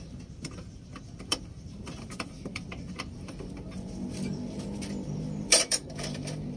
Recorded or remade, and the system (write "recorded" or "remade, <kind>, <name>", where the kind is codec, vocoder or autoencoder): remade, vocoder, BigVGAN v2